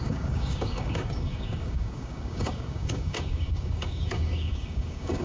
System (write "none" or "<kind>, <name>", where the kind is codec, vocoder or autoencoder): codec, DAC